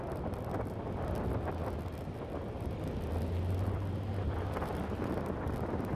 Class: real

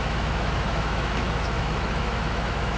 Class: fake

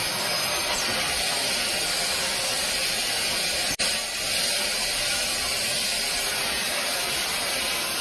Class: real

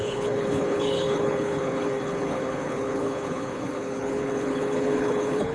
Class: fake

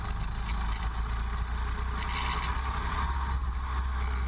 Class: real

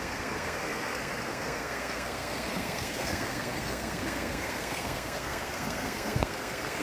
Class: fake